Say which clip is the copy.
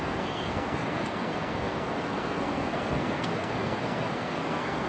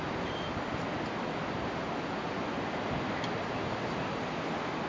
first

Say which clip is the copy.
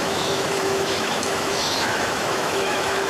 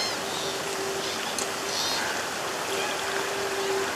first